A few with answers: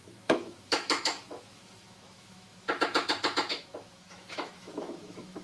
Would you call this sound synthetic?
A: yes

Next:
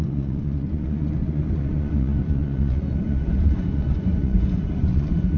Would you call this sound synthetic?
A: yes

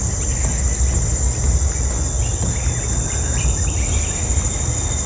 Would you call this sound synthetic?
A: no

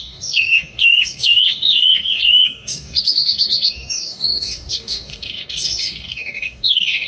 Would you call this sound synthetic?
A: yes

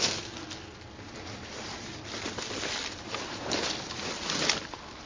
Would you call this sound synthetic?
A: no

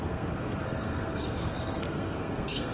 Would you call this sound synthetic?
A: yes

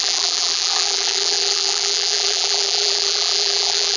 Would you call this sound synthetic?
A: yes